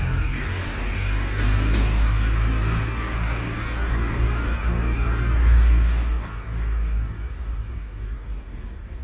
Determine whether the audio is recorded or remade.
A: remade